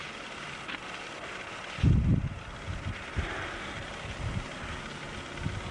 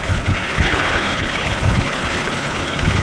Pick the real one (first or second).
first